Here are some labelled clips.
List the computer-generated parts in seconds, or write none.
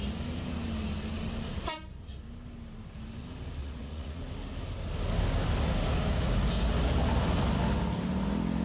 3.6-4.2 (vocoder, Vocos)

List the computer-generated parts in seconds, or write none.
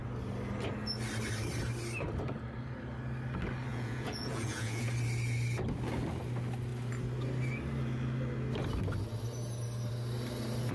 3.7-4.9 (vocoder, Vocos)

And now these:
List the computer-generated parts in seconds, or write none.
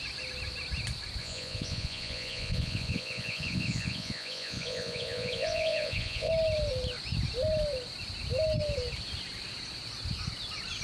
1.2-6.3 (vocoder, Vocos)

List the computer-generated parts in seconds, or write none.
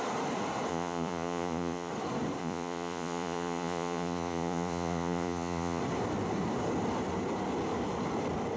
0.7-1.9 (vocoder, Vocos); 2.4-5.8